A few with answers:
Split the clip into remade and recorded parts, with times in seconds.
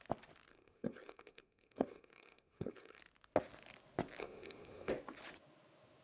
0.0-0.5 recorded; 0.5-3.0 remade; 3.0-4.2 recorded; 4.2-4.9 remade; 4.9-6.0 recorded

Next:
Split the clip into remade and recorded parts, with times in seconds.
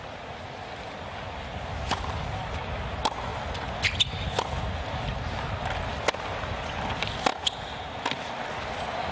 0.0-9.1 recorded